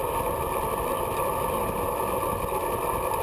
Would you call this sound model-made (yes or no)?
no